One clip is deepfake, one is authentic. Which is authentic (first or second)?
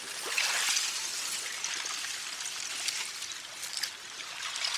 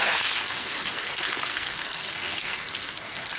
first